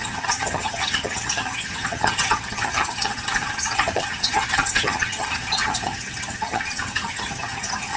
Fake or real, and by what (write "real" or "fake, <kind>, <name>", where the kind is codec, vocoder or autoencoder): fake, vocoder, HiFi-GAN